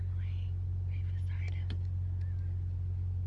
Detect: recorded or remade recorded